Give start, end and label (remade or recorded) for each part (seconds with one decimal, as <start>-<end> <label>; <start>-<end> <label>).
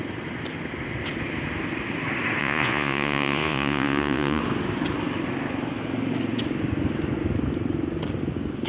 0.0-2.4 recorded; 2.4-4.4 remade; 4.4-8.7 recorded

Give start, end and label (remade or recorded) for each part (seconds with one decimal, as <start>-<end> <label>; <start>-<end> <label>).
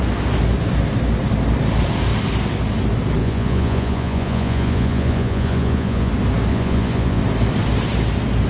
0.0-3.2 recorded; 3.2-6.1 remade; 6.1-6.5 recorded; 6.5-7.2 remade; 7.2-8.5 recorded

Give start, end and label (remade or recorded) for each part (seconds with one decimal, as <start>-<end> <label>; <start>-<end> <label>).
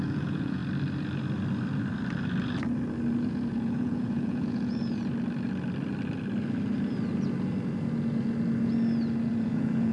0.0-0.6 remade; 0.6-3.2 recorded; 3.2-5.0 remade; 5.0-9.3 recorded; 9.3-9.9 remade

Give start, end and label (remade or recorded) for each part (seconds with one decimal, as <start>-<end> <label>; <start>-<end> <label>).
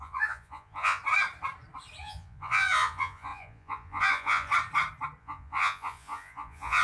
0.0-1.0 remade; 1.0-2.0 recorded; 2.0-4.5 remade; 4.5-5.2 recorded; 5.2-6.8 remade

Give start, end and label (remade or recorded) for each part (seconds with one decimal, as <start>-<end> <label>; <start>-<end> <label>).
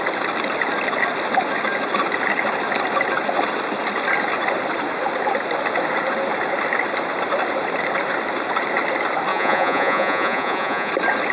0.0-9.3 recorded; 9.3-10.9 remade; 10.9-11.3 recorded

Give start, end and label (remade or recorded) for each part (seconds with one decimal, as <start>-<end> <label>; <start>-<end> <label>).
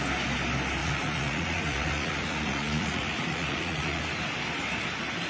0.0-0.8 recorded; 0.8-4.0 remade; 4.0-5.3 recorded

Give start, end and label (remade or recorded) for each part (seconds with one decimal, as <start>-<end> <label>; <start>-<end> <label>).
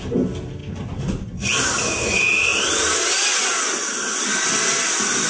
0.0-5.3 recorded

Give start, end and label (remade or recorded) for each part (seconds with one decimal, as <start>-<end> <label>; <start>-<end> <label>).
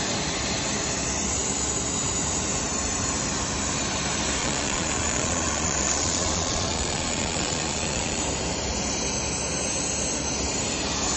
0.0-4.4 recorded; 4.4-8.2 remade; 8.2-11.2 recorded